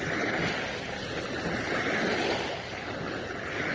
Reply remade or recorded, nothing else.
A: recorded